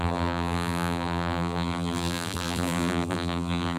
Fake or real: fake